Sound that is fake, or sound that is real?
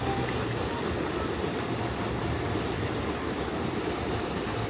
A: real